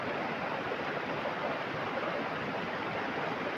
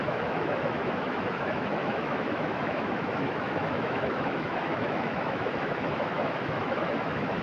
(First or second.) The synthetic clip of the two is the second